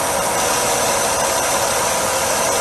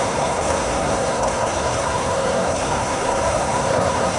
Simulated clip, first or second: second